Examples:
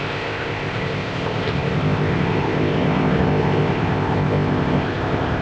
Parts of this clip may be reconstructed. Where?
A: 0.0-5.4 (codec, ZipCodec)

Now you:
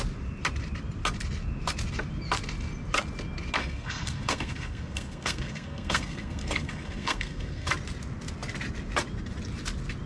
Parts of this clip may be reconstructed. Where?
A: 3.6-7.7 (codec, SNAC)

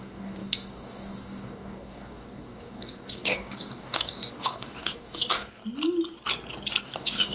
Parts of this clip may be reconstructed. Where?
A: 0.0-5.6 (codec, DAC); 6.8-7.3

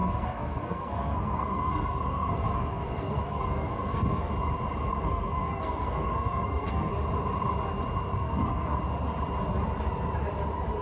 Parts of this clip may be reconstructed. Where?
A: 0.0-4.3 (codec, SNAC); 4.9-6.9; 8.1-8.8

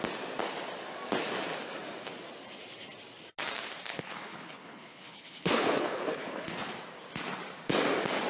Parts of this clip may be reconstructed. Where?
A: 3.9-6.6 (codec, HILCodec)

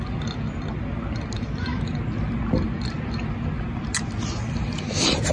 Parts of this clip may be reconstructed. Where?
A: none

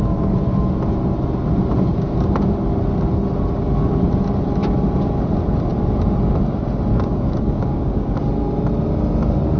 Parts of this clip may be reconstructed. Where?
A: 6.9-8.2 (codec, DAC)